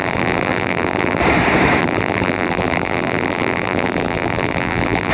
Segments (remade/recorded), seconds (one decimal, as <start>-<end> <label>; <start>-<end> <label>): 0.0-1.2 remade; 1.2-1.8 recorded; 1.8-5.1 remade